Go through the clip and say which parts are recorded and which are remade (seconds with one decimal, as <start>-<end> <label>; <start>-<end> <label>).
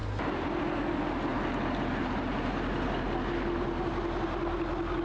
0.0-5.0 recorded